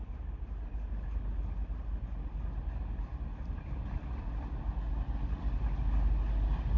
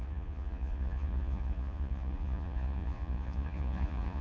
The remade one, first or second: second